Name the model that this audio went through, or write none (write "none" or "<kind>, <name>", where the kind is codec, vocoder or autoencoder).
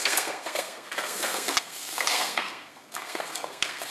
codec, SNAC